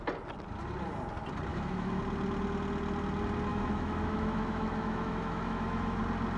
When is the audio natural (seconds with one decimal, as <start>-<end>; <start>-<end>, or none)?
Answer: 0.0-1.5; 2.0-3.5; 6.0-6.4